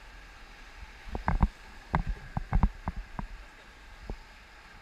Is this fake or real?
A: real